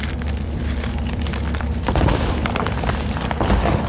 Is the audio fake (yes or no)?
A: yes